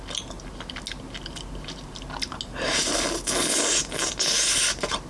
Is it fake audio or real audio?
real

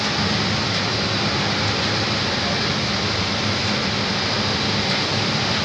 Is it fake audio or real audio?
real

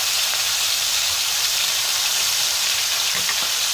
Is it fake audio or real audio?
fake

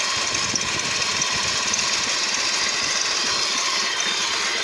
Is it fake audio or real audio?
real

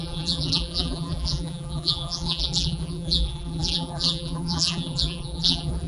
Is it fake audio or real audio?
fake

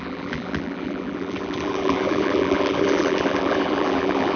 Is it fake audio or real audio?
fake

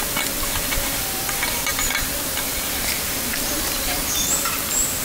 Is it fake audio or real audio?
fake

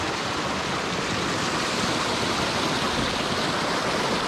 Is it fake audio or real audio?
real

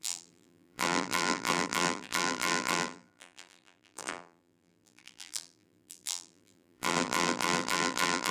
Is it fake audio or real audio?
fake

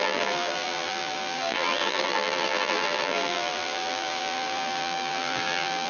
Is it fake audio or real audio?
fake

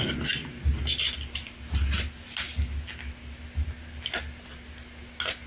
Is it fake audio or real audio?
real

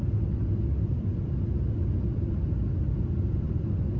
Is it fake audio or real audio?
real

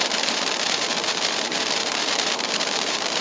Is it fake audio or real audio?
fake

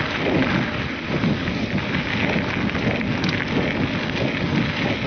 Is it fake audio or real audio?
real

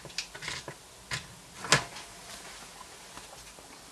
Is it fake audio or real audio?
real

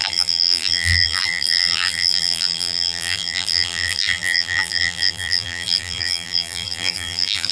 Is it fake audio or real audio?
fake